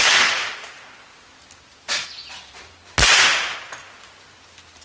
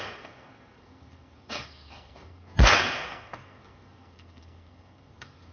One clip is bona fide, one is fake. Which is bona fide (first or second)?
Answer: first